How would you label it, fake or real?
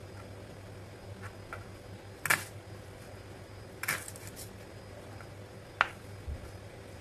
real